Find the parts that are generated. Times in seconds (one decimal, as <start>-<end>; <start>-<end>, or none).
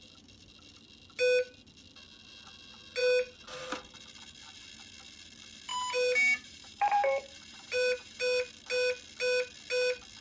5.7-8.2